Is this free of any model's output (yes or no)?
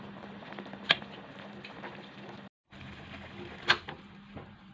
no